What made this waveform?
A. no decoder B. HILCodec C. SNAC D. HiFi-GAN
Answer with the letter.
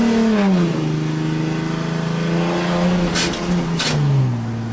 A